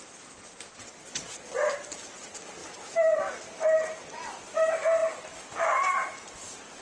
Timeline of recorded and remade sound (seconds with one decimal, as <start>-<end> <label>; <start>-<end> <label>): 0.0-1.0 recorded; 1.0-1.7 remade; 1.7-6.8 recorded